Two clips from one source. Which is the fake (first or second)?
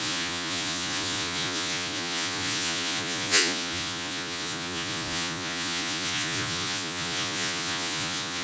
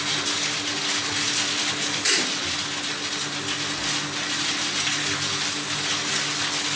first